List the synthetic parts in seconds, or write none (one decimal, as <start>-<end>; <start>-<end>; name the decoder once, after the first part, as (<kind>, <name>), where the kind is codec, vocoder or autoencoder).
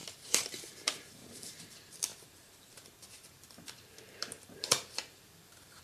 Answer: 0.0-5.8 (vocoder, BigVGAN v2)